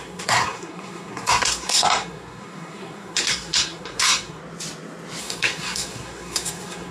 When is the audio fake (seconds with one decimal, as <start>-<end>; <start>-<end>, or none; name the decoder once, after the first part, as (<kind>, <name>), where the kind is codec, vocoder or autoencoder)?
0.0-4.4 (codec, SNAC); 5.2-6.9